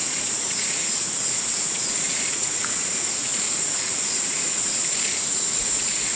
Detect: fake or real fake